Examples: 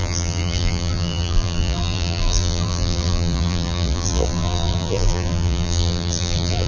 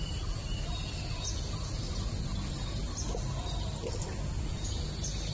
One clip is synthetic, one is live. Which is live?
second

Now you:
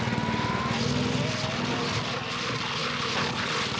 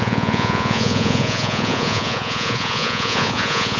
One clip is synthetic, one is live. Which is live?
first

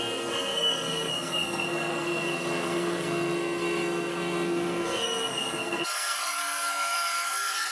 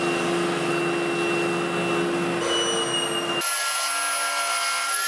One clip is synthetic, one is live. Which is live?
second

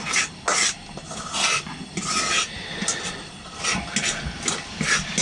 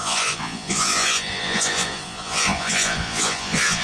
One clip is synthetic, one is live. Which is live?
first